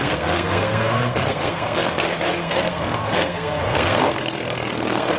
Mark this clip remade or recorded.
remade